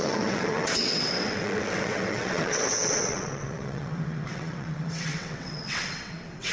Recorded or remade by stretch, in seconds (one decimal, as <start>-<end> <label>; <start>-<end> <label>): 0.0-6.5 remade